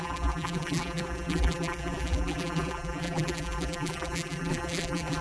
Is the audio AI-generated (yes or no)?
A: yes